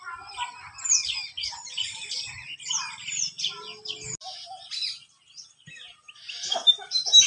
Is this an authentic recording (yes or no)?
yes